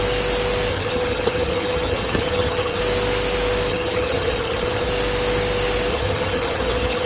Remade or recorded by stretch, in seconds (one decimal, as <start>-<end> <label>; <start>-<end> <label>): 0.0-0.7 recorded; 0.7-2.8 remade; 2.8-3.7 recorded; 3.7-4.9 remade; 4.9-5.9 recorded; 5.9-7.1 remade